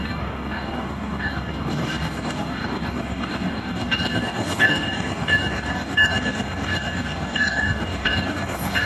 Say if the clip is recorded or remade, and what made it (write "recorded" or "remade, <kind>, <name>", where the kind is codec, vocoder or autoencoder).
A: remade, codec, DAC